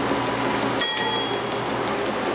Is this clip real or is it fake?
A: real